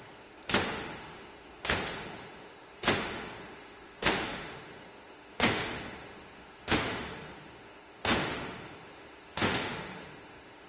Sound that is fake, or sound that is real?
fake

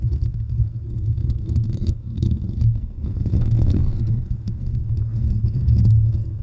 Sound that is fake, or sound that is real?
fake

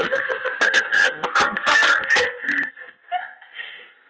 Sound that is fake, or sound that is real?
fake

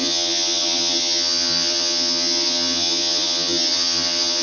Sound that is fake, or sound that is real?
fake